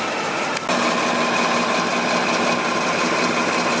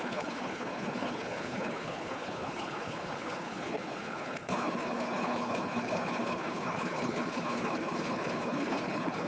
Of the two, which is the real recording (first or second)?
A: first